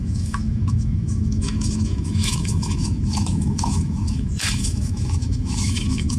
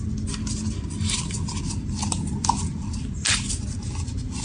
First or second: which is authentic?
second